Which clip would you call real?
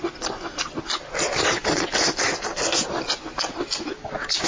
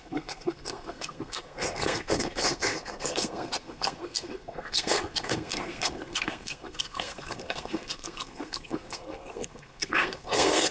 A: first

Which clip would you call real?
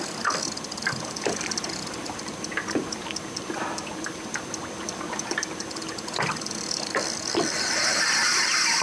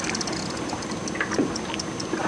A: second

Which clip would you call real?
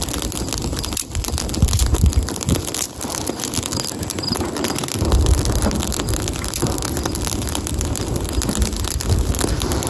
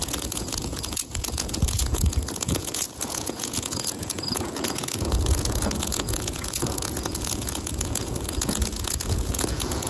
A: first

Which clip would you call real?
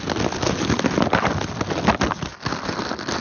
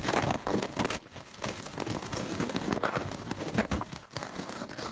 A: first